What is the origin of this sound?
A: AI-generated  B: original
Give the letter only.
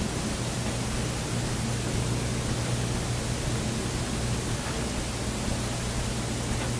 B